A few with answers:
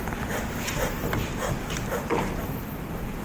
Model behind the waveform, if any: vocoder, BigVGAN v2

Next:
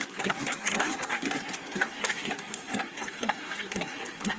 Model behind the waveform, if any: codec, SNAC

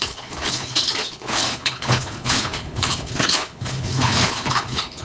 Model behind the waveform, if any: codec, HILCodec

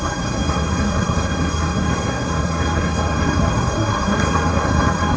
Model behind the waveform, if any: codec, SNAC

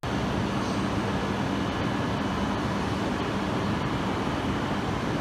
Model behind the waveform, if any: none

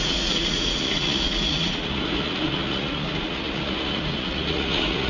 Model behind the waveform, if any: vocoder, Vocos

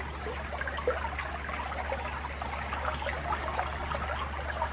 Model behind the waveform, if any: none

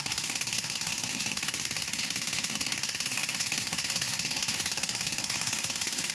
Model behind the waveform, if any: codec, SNAC